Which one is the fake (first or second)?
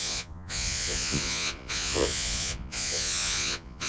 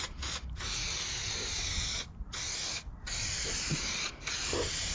first